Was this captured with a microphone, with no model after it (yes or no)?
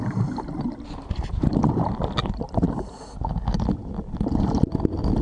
yes